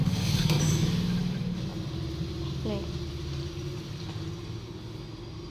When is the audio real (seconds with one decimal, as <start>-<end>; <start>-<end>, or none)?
0.6-5.5